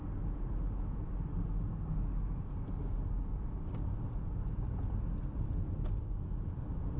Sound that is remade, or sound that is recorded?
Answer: recorded